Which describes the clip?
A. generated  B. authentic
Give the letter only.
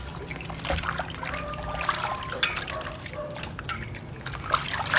B